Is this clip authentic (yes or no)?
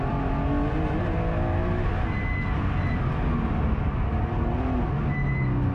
yes